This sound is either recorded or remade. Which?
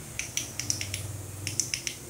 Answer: recorded